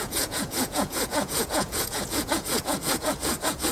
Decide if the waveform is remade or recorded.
remade